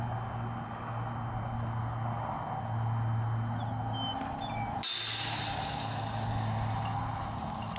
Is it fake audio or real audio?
real